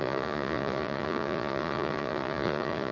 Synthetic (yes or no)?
yes